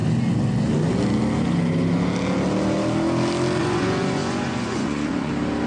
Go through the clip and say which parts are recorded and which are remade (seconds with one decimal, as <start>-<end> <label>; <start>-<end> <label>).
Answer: 0.0-3.6 recorded; 3.6-5.3 remade; 5.3-5.7 recorded